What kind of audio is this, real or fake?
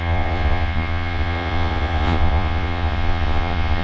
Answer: fake